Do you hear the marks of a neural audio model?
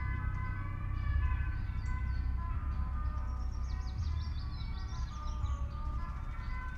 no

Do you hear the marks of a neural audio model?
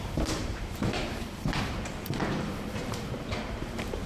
yes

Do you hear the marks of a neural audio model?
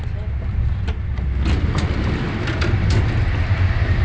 no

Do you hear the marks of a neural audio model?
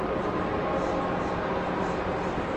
no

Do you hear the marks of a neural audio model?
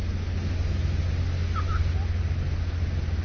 no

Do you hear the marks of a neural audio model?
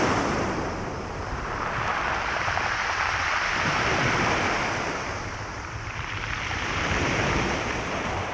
yes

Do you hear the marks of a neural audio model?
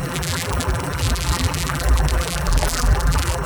yes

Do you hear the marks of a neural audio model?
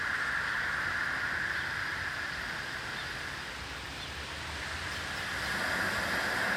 no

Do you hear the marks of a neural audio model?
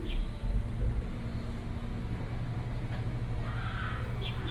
no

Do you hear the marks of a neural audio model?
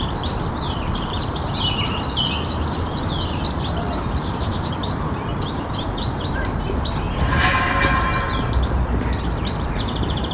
yes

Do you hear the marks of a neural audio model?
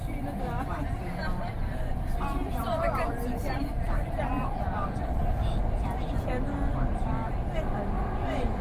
no